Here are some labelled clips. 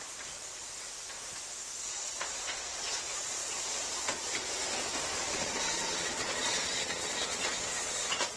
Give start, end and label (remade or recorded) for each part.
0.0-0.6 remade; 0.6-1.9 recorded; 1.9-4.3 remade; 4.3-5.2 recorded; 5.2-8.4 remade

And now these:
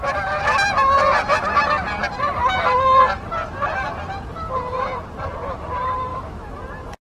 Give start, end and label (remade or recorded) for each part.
0.0-6.1 recorded; 6.1-6.6 remade; 6.6-7.0 recorded

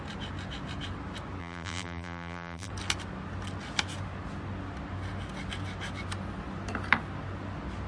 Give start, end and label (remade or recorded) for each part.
0.0-1.4 recorded; 1.4-2.7 remade; 2.7-7.9 recorded

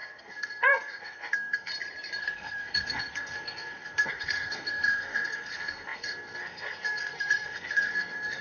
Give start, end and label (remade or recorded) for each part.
0.0-1.7 remade; 1.7-2.2 recorded; 2.2-8.4 remade

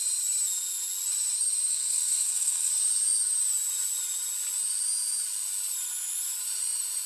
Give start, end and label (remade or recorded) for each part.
0.0-1.7 recorded; 1.7-2.7 remade; 2.7-7.1 recorded

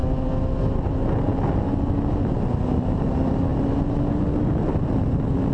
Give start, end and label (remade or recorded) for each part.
0.0-5.5 recorded

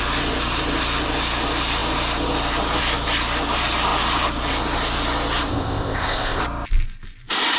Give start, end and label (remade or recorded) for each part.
0.0-5.5 recorded; 5.5-6.4 remade; 6.4-7.6 recorded

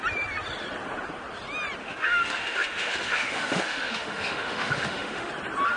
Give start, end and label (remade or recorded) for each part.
0.0-1.8 recorded; 1.8-5.3 remade; 5.3-5.8 recorded